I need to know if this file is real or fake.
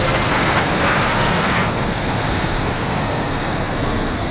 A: fake